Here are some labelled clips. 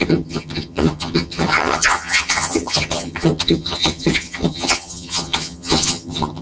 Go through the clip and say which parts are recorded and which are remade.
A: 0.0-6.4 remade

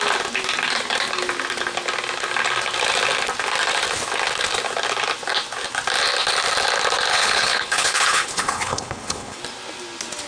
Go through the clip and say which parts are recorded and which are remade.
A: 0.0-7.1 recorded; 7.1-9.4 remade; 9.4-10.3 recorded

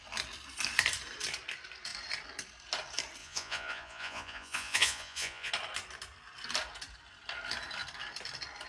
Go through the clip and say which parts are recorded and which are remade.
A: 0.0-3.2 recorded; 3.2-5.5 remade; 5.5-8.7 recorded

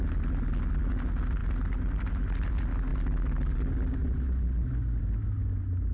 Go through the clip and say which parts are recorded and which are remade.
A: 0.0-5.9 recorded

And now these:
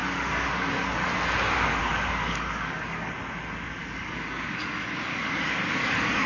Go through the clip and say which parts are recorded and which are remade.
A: 0.0-1.1 remade; 1.1-1.8 recorded; 1.8-3.1 remade; 3.1-3.8 recorded; 3.8-6.3 remade

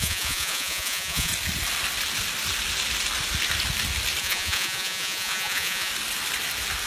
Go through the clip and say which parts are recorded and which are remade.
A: 0.0-1.3 remade; 1.3-4.2 recorded; 4.2-5.9 remade; 5.9-6.9 recorded

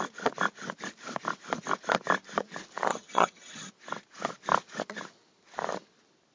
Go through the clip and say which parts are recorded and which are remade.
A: 0.0-2.9 recorded; 2.9-3.7 remade; 3.7-6.3 recorded